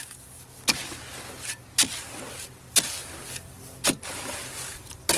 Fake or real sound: real